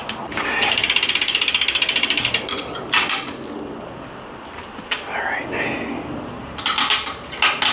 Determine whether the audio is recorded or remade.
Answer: recorded